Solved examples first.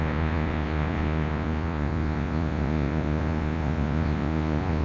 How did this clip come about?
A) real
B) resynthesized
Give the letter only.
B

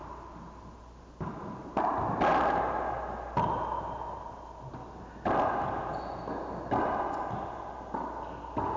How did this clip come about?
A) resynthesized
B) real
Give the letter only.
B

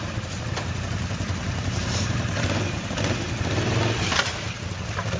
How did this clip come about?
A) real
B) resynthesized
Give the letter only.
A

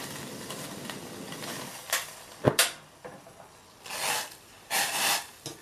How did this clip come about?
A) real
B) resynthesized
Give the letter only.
A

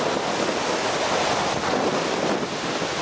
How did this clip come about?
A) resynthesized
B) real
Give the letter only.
B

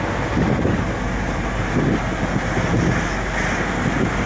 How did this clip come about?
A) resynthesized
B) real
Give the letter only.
B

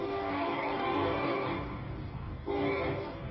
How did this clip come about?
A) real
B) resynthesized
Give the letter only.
B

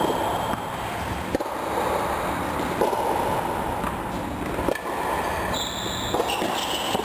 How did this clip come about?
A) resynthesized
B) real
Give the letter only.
B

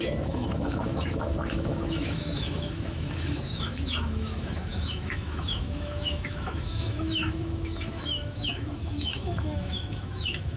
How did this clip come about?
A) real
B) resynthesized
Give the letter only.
B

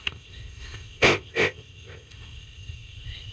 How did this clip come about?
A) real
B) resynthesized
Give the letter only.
B